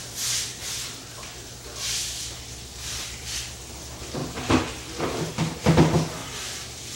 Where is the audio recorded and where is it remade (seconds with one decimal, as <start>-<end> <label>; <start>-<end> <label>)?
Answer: 0.0-2.0 recorded; 2.0-3.6 remade; 3.6-6.2 recorded; 6.2-7.0 remade